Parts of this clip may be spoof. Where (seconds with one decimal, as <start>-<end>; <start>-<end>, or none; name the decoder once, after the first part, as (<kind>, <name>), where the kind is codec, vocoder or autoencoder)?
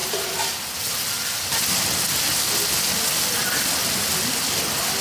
3.8-4.4 (vocoder, BigVGAN v2)